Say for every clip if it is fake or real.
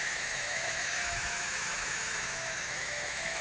fake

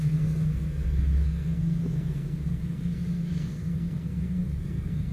fake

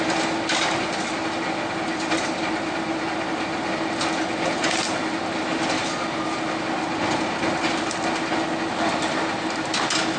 real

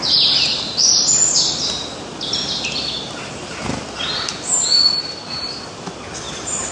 real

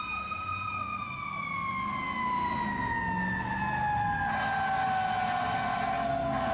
real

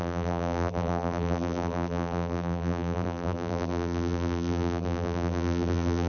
fake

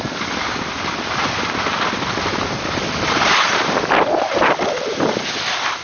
real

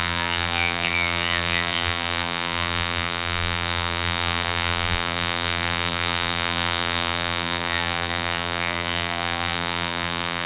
fake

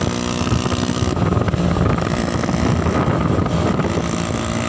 real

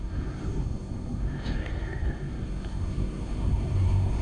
fake